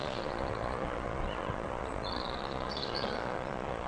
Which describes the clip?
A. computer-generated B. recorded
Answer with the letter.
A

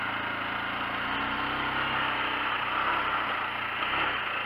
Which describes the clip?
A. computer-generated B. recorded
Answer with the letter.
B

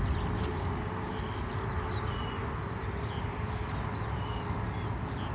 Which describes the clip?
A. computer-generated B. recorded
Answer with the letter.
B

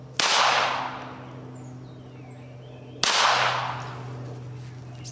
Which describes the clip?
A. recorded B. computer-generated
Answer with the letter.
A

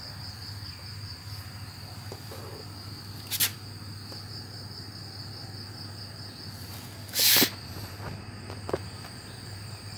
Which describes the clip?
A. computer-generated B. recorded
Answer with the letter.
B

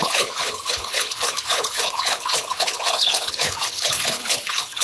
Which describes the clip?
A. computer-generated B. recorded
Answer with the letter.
A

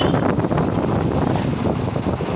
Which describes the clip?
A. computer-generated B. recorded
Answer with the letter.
B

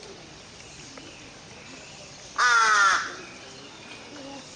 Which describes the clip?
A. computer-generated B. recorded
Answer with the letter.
B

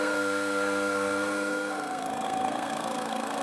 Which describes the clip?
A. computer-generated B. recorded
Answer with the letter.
A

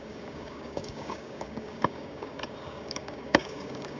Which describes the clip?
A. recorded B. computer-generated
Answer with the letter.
B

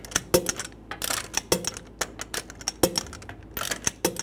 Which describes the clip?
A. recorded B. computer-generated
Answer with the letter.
A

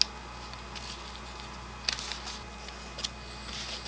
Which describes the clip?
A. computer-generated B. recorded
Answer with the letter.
B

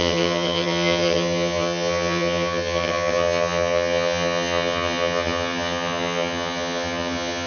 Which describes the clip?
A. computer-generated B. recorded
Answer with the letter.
A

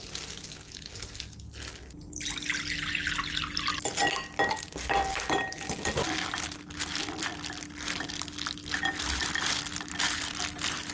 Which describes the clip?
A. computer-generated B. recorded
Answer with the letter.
B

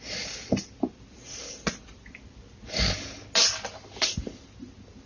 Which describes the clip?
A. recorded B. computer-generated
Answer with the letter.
A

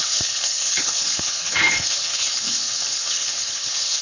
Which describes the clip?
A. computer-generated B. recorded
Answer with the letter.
A